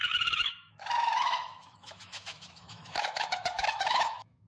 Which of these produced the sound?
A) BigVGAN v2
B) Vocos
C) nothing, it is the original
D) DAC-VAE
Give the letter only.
D